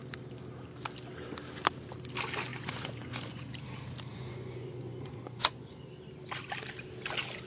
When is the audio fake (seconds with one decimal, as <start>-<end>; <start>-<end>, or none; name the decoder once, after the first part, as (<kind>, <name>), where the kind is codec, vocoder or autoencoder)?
2.5-3.5 (vocoder, Vocos); 4.1-5.8